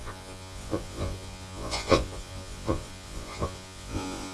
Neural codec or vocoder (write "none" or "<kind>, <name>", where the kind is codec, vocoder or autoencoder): vocoder, Vocos